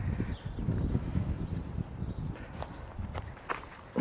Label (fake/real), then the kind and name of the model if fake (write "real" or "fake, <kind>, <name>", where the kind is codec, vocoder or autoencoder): real